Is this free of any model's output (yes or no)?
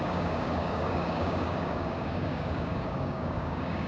no